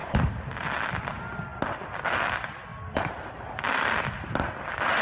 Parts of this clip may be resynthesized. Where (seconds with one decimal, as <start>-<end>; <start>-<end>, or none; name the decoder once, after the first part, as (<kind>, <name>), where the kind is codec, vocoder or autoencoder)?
none